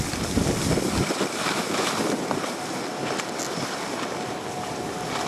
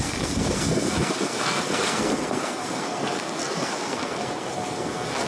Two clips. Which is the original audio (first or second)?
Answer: first